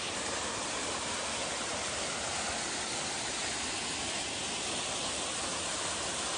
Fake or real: real